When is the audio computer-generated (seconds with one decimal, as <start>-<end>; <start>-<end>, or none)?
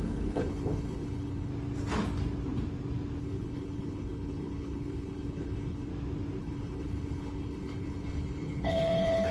0.0-1.5; 3.2-5.9; 6.4-9.3